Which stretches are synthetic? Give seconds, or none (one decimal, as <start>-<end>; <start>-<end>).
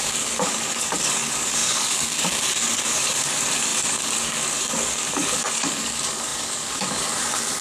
0.0-7.6